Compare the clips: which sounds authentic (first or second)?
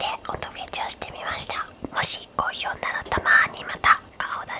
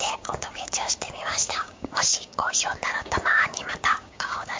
first